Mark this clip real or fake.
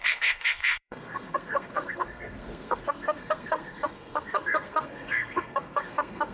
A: fake